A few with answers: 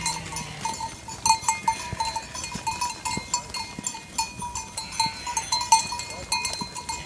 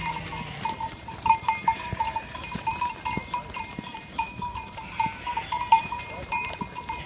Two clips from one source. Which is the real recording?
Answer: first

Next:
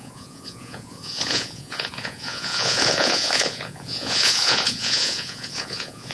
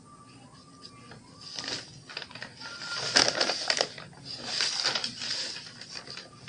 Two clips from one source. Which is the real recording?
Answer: second